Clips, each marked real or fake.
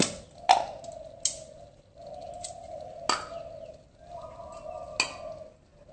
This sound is real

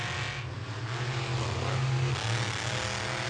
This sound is real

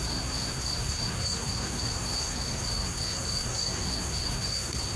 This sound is fake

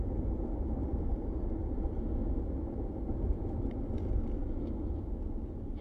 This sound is real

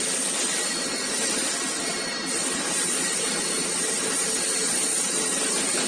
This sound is real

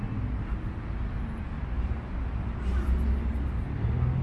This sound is real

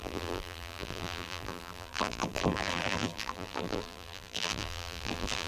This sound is fake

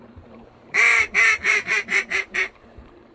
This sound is fake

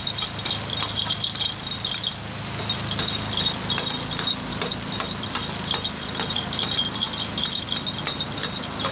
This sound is real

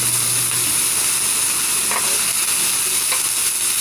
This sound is real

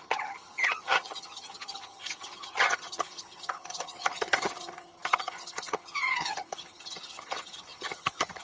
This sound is fake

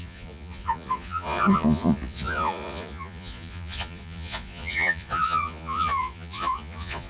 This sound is fake